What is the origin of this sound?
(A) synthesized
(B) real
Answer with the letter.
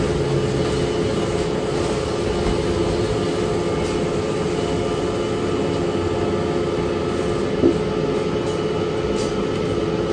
B